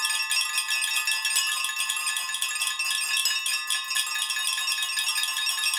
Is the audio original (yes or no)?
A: yes